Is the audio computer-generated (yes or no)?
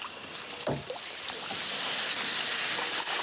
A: no